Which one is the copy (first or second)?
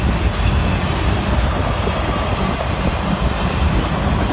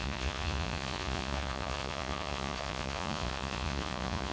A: second